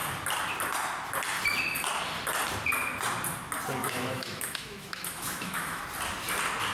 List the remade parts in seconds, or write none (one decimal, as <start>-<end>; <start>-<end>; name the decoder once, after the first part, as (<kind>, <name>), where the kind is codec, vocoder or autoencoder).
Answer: 3.8-5.8 (autoencoder, DAC-VAE)